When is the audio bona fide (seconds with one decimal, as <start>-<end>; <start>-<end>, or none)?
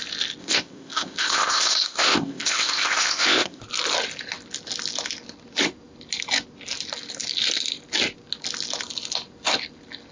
0.0-0.4; 3.6-10.1